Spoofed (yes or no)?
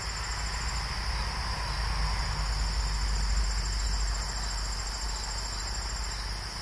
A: no